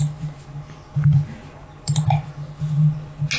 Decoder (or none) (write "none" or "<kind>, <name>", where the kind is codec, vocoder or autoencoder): none